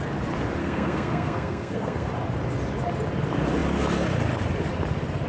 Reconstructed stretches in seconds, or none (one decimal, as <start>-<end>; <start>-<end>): 0.6-2.1